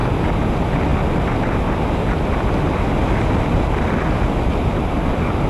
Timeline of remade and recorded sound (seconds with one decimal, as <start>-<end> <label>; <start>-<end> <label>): 0.0-5.5 recorded